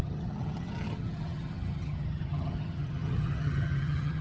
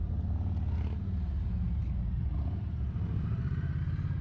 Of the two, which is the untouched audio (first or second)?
second